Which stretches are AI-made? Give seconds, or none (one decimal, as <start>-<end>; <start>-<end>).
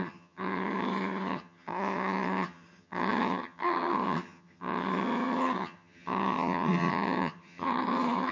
0.0-8.3